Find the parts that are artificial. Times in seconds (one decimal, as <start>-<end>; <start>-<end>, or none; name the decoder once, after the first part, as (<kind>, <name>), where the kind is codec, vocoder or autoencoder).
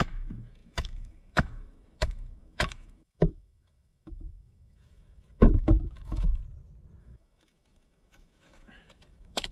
0.0-6.4 (autoencoder, DAC-VAE); 7.0-9.5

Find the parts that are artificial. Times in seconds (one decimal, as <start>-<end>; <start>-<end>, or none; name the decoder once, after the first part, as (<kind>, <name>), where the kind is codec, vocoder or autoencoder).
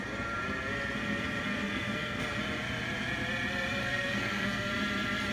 1.5-2.2 (codec, SNAC); 3.8-4.7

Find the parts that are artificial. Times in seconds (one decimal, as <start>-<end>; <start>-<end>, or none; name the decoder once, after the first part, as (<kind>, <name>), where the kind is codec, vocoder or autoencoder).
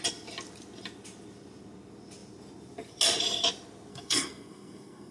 3.9-5.1 (codec, SNAC)